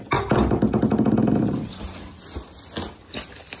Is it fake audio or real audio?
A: real